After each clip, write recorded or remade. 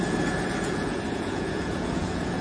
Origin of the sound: remade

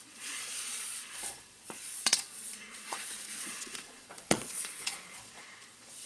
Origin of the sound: remade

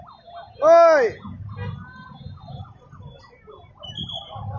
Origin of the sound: recorded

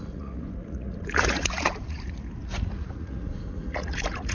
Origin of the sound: remade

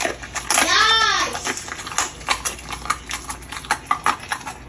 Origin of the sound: recorded